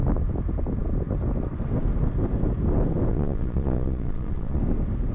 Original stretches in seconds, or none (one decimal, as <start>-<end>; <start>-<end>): 0.0-3.1; 4.6-5.1